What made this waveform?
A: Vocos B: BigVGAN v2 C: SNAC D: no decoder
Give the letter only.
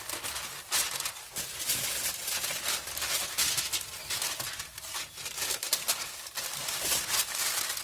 D